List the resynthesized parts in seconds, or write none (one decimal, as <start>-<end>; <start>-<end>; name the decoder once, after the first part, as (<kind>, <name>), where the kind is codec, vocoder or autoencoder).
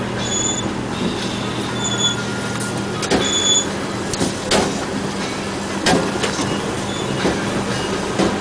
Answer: none